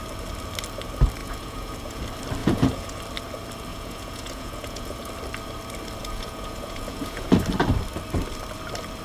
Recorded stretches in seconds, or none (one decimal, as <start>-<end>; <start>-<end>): 0.0-1.2; 2.0-2.4; 3.0-3.7; 5.1-6.0; 7.3-9.0